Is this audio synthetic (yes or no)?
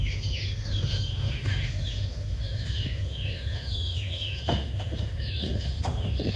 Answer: yes